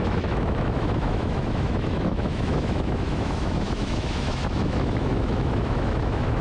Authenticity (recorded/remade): remade